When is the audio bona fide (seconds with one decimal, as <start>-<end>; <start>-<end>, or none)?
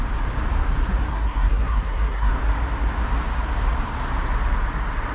0.0-1.1; 2.3-5.1